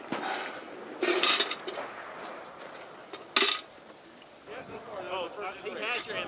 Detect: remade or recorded recorded